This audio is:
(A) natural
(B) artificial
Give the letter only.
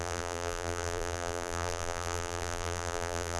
B